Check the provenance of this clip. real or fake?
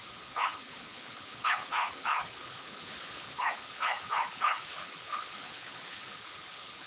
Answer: fake